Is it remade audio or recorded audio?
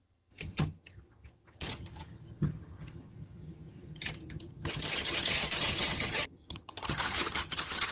remade